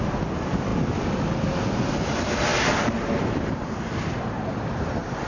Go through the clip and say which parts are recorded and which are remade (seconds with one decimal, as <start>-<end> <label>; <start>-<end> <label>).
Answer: 0.0-2.5 recorded; 2.5-5.3 remade